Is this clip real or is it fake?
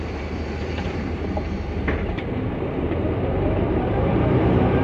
fake